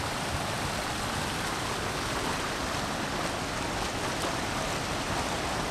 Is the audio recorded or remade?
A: recorded